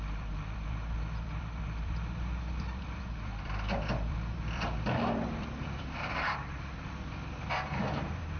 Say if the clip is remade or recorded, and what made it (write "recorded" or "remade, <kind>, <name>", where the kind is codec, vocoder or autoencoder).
remade, vocoder, BigVGAN v2